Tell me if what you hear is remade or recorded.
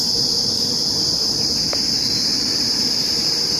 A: remade